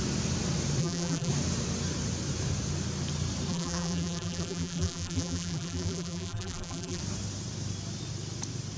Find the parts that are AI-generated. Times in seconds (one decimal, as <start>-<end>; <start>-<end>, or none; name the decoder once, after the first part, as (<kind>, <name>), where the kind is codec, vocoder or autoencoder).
0.8-1.3 (vocoder, BigVGAN v2); 3.5-7.0